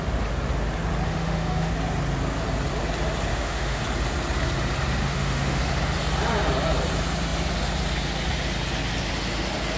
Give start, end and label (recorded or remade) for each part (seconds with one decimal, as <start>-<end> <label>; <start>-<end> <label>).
0.0-1.1 recorded; 1.1-1.7 remade; 1.7-3.3 recorded; 3.3-3.8 remade; 3.8-5.0 recorded; 5.0-5.6 remade; 5.6-9.8 recorded